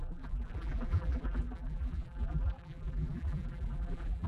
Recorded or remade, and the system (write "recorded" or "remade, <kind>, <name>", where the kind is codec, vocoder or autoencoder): remade, vocoder, BigVGAN v2